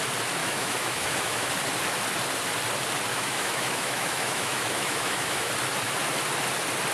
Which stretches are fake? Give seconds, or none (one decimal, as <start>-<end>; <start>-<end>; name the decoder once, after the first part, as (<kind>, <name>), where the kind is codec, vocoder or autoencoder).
0.4-1.5 (autoencoder, DAC-VAE); 3.1-5.5